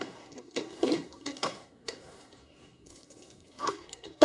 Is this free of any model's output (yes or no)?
no